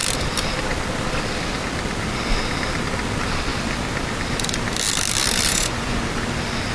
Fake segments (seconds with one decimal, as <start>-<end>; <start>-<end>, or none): 5.5-6.0